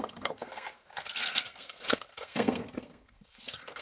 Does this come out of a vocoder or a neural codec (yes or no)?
yes